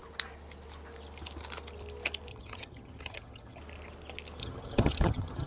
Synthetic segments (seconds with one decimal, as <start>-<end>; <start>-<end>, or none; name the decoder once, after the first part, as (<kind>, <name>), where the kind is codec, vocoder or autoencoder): 2.3-3.6 (vocoder, HiFi-GAN); 4.4-5.5